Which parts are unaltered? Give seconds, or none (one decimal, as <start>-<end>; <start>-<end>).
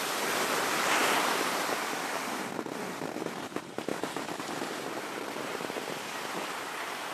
3.9-4.8